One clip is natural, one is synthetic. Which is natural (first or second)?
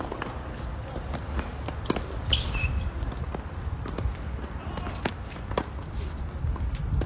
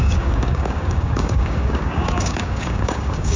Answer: first